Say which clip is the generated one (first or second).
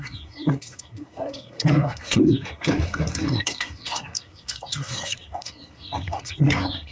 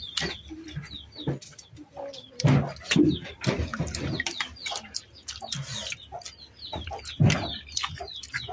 first